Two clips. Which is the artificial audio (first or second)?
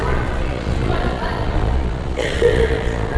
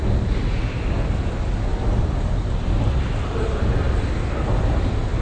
first